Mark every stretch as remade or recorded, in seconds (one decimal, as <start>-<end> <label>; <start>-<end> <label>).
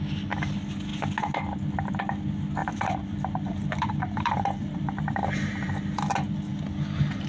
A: 0.0-2.6 recorded; 2.6-5.7 remade; 5.7-7.3 recorded